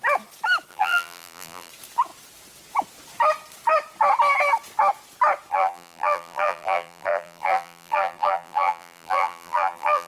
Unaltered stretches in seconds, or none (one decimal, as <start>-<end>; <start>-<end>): 0.0-0.7; 1.7-5.5